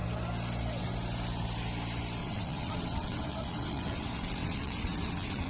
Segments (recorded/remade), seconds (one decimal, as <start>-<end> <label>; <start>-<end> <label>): 0.0-2.2 recorded; 2.2-5.5 remade